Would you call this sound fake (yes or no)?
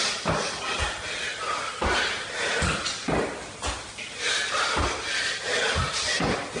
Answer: no